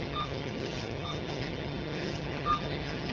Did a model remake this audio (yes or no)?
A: yes